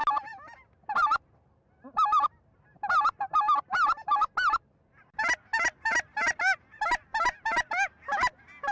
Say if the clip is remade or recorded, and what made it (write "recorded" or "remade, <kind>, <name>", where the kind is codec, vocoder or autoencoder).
recorded